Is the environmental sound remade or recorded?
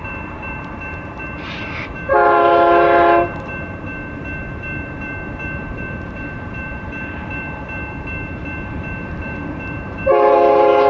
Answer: remade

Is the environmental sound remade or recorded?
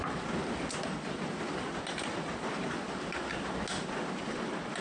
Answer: recorded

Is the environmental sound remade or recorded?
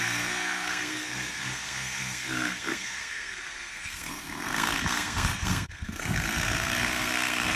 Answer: remade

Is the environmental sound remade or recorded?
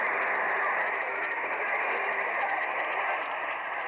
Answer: recorded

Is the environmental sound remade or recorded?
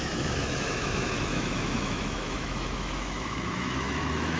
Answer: remade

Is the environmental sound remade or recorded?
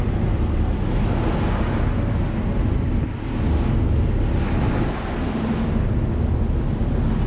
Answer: recorded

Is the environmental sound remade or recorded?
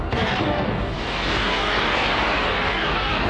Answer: remade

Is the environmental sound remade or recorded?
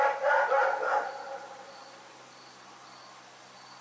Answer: recorded